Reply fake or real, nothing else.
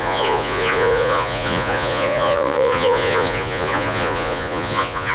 fake